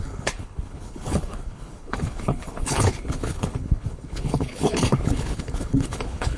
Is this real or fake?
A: fake